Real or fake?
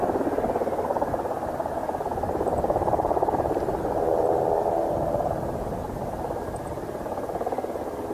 real